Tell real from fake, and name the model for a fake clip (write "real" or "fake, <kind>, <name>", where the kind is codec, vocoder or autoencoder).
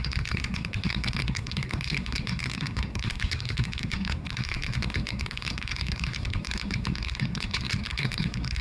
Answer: fake, codec, SNAC